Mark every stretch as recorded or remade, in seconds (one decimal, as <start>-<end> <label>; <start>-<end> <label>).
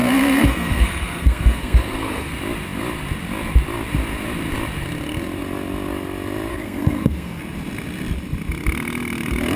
0.0-2.3 remade; 2.3-6.5 recorded; 6.5-7.4 remade; 7.4-9.6 recorded